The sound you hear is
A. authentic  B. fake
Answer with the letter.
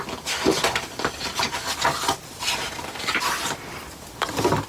A